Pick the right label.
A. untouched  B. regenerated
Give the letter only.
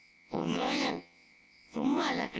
B